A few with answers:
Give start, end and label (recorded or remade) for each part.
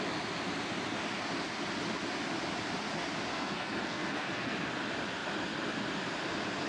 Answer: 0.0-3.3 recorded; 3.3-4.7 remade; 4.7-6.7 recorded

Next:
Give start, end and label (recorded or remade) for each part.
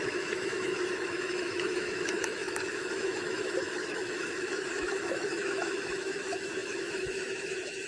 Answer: 0.0-7.9 remade